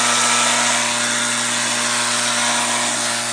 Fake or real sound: real